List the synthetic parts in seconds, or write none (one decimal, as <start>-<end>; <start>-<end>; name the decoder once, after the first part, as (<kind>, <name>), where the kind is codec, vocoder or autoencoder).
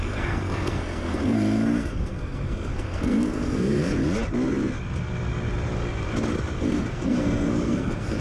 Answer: 0.0-4.0 (codec, SNAC); 6.6-8.2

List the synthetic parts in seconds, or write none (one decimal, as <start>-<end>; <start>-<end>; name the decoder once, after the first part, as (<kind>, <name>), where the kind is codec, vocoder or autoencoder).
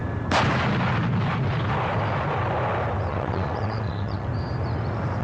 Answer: 3.1-4.3 (vocoder, WaveNeXt)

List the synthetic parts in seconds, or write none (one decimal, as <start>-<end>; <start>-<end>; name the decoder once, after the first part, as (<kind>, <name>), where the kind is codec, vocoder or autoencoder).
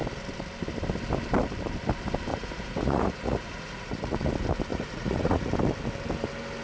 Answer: 2.3-4.3 (vocoder, Vocos); 4.7-5.5